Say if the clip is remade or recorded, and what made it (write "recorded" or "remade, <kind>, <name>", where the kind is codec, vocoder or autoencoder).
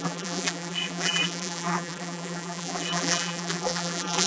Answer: remade, vocoder, BigVGAN v2